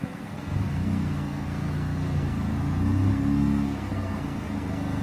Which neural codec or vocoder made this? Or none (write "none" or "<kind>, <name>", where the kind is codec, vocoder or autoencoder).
codec, SNAC